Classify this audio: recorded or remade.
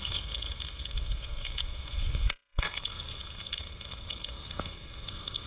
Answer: remade